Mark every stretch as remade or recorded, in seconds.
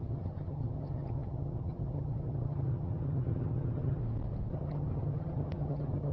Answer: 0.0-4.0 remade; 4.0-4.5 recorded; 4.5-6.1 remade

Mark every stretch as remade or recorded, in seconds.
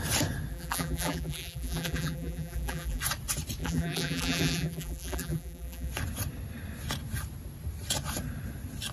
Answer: 0.0-0.5 recorded; 0.5-3.0 remade; 3.0-3.6 recorded; 3.6-5.9 remade; 5.9-8.9 recorded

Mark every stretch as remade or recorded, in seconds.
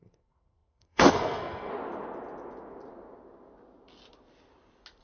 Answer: 0.0-1.7 remade; 1.7-5.0 recorded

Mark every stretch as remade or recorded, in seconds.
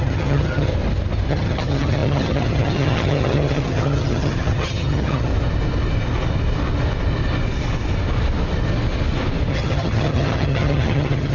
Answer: 0.0-0.7 remade; 0.7-1.3 recorded; 1.3-5.3 remade; 5.3-9.5 recorded; 9.5-11.3 remade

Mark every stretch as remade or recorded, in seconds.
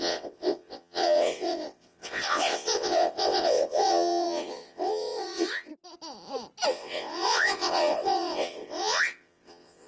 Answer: 0.0-5.7 remade; 5.7-6.7 recorded; 6.7-9.9 remade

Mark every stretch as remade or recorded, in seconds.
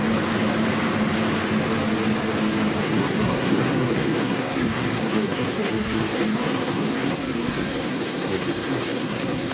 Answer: 0.0-2.8 recorded; 2.8-9.5 remade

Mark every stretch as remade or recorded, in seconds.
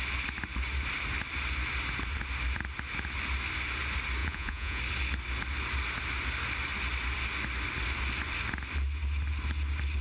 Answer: 0.0-4.2 recorded; 4.2-4.8 remade; 4.8-10.0 recorded